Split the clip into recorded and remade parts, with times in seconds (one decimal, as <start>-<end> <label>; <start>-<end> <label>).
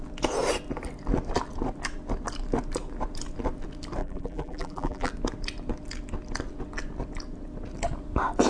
0.0-4.0 recorded; 4.0-5.1 remade; 5.1-8.5 recorded